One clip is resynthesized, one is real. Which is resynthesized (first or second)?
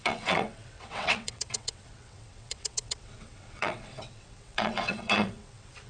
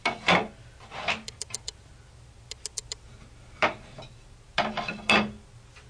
first